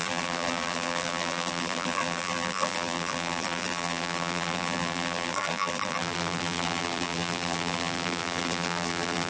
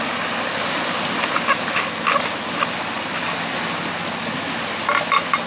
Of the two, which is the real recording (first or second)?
second